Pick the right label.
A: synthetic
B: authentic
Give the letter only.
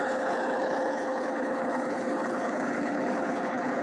A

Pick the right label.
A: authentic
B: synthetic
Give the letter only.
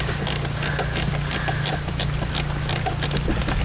A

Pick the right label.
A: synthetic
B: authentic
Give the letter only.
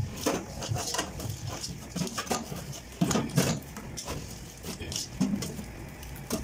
A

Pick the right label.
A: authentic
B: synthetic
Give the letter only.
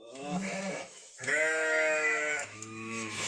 B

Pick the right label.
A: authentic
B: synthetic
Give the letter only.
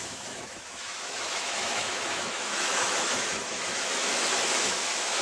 B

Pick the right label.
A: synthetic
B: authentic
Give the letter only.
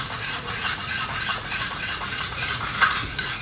A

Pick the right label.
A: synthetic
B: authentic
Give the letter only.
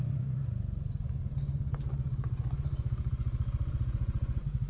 A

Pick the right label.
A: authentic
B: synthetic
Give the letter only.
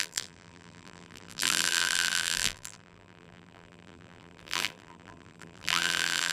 B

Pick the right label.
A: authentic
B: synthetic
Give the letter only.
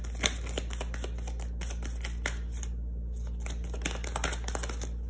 A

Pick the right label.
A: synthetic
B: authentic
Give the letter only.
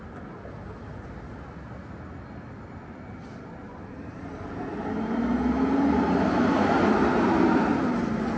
B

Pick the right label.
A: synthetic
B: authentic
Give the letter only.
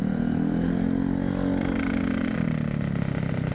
B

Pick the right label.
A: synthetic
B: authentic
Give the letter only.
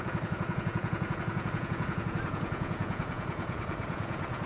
A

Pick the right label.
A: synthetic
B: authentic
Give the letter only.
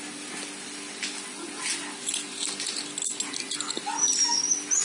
B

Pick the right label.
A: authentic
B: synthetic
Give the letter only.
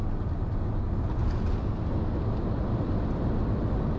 A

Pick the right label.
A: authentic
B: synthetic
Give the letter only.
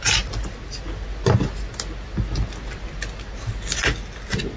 A